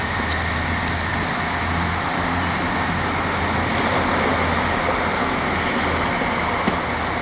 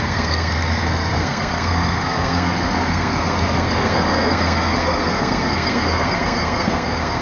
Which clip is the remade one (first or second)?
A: second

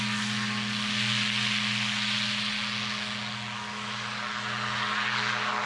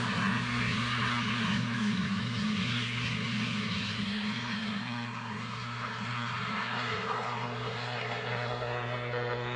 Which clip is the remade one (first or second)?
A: second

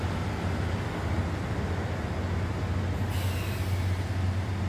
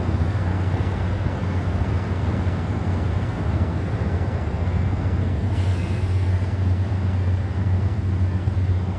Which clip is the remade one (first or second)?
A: second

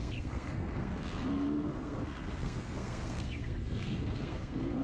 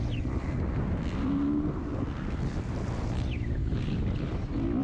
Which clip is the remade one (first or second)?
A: first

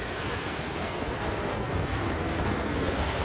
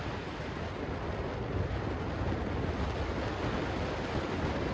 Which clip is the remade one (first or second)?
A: first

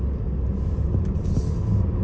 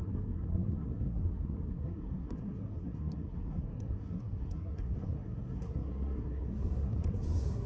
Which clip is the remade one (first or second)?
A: second